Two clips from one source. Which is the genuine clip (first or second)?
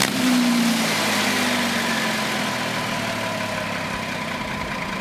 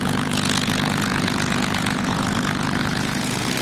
first